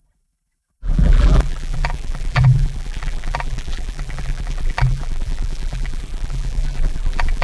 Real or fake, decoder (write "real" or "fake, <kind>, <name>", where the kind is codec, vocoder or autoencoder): fake, vocoder, BigVGAN v2